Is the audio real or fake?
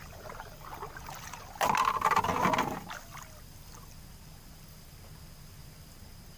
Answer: real